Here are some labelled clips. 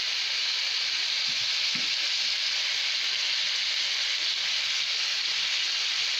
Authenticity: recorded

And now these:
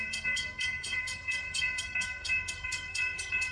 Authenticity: remade